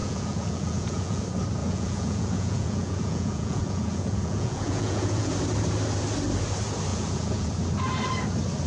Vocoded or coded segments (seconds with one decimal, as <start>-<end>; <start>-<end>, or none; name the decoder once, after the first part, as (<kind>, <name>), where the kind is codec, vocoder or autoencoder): 0.0-1.2 (vocoder, Vocos); 1.6-5.3; 6.9-7.5